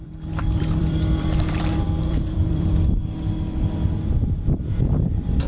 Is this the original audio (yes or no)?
no